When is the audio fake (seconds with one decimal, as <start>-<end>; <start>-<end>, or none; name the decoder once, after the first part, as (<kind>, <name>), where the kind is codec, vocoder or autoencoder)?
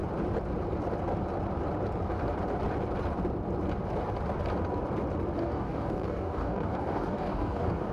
5.4-7.9 (codec, DAC)